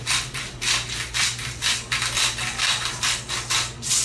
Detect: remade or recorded recorded